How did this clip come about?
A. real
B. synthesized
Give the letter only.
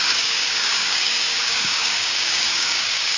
B